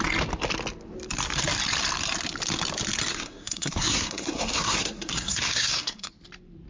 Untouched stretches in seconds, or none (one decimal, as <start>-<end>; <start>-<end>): 0.0-3.1; 6.1-6.7